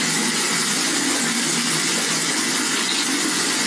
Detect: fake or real fake